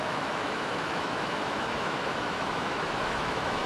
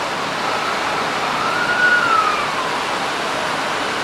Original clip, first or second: second